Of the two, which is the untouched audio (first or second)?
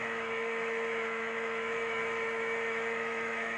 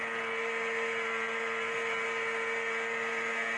second